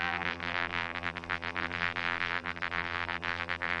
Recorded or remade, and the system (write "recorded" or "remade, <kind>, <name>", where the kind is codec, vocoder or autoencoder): remade, vocoder, BigVGAN v2